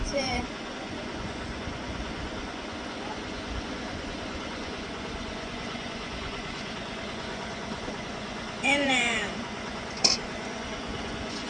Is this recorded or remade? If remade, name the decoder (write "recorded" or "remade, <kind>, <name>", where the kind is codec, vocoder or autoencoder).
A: remade, vocoder, Vocos